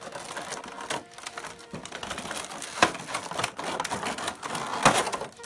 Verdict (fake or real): real